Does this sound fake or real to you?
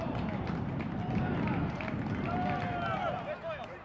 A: real